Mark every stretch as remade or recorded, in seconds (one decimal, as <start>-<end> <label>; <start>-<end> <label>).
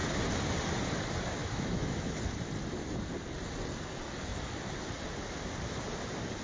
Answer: 0.0-1.4 recorded; 1.4-2.0 remade; 2.0-6.4 recorded